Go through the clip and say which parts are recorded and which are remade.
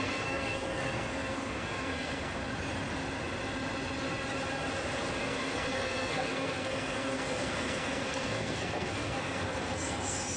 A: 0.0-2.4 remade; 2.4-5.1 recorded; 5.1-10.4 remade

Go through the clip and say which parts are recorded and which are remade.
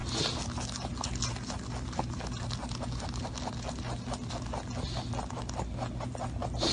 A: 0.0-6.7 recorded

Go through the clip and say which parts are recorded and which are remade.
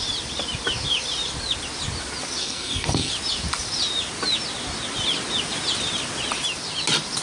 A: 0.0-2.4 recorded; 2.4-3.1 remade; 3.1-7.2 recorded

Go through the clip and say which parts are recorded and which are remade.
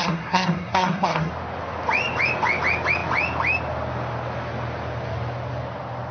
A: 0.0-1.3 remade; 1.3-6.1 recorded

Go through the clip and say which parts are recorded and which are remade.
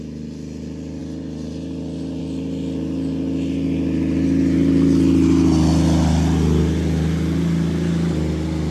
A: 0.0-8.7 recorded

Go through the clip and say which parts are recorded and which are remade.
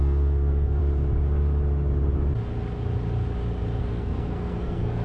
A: 0.0-0.8 remade; 0.8-3.8 recorded; 3.8-5.0 remade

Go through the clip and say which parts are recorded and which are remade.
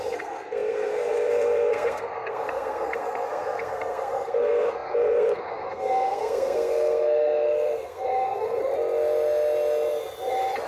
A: 0.0-8.6 remade; 8.6-10.7 recorded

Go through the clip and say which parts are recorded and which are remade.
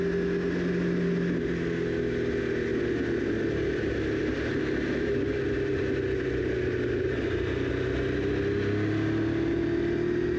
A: 0.0-10.4 recorded